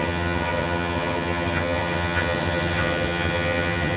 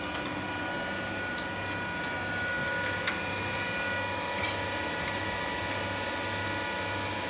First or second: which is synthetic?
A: first